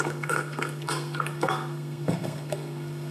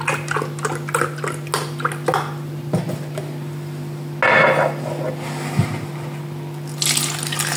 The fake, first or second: first